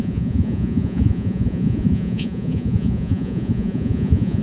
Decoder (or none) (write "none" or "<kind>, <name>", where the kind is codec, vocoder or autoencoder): vocoder, Vocos